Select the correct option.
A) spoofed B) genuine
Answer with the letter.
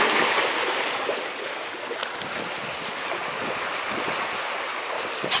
B